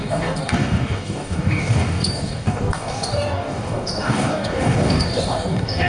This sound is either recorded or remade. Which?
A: remade